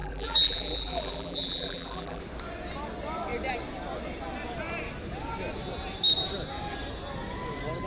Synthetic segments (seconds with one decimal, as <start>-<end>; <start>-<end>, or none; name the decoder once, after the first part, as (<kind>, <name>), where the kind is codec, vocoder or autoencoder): 0.0-2.2 (vocoder, BigVGAN v2)